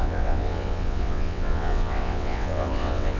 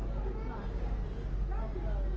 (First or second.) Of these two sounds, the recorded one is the second